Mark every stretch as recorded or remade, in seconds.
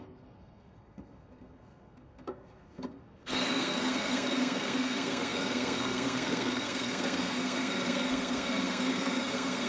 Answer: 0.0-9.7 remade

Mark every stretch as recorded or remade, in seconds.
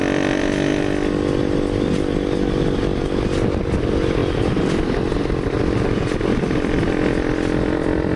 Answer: 0.0-0.7 remade; 0.7-3.8 recorded; 3.8-8.2 remade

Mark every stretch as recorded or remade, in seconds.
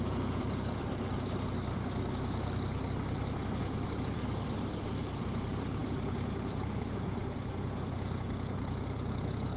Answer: 0.0-0.8 remade; 0.8-3.6 recorded; 3.6-4.2 remade; 4.2-5.2 recorded; 5.2-9.6 remade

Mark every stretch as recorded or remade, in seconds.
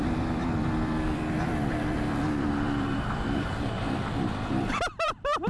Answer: 0.0-5.5 remade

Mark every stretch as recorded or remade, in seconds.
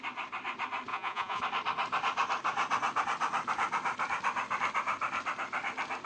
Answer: 0.0-0.9 recorded; 0.9-1.4 remade; 1.4-6.1 recorded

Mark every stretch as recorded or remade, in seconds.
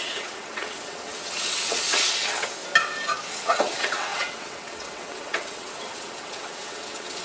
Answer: 0.0-2.6 remade; 2.6-3.3 recorded; 3.3-7.2 remade